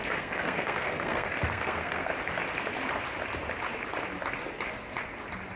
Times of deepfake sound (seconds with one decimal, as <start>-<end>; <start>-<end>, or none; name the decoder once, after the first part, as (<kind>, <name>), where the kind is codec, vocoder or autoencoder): 0.0-2.1 (codec, SNAC)